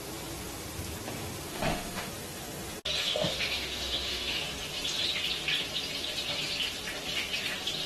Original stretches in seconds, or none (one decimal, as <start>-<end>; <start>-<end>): 0.0-1.5; 2.1-3.0; 4.4-7.9